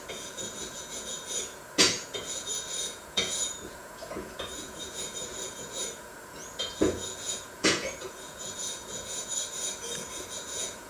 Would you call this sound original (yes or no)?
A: no